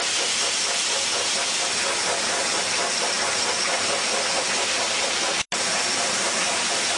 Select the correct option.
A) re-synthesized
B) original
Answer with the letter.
B